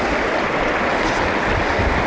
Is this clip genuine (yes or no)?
yes